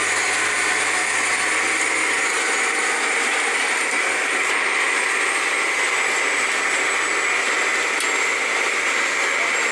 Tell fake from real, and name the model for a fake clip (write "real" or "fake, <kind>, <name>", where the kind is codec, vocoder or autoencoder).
real